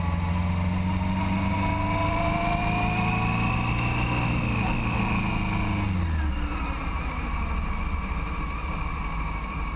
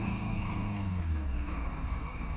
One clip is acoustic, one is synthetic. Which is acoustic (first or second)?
first